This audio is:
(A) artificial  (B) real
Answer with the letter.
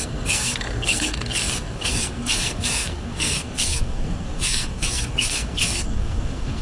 A